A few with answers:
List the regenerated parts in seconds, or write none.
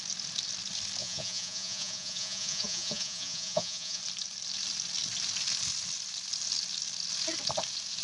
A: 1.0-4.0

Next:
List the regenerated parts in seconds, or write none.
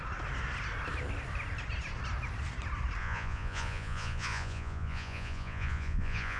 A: 3.0-6.4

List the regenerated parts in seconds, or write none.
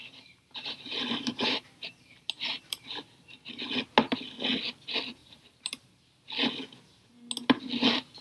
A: 0.0-2.9; 5.2-5.9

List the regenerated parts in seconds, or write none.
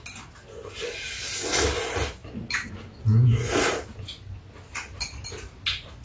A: none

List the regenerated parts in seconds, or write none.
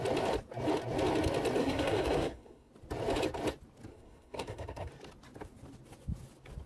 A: 1.6-2.7; 3.9-4.9